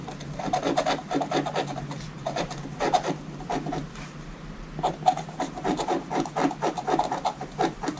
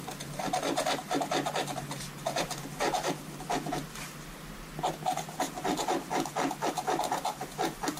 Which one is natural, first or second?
second